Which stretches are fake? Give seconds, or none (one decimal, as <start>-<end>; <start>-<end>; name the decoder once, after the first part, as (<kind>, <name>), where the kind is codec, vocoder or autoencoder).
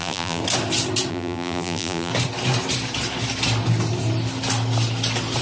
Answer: 0.0-0.4 (vocoder, BigVGAN v2); 1.1-2.1